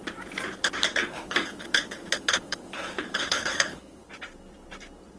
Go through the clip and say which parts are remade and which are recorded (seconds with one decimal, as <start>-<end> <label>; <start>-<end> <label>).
0.0-1.0 recorded; 1.0-4.1 remade; 4.1-5.2 recorded